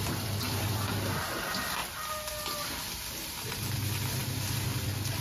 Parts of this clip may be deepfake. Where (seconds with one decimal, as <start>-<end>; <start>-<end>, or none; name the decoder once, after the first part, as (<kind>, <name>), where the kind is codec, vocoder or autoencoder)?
0.0-1.8 (vocoder, BigVGAN v2); 2.3-5.2